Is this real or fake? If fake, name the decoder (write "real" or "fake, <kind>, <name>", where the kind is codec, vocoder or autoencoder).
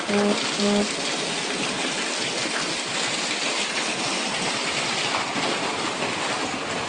real